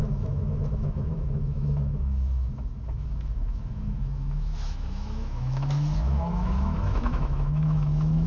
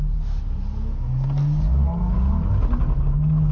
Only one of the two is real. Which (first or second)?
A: second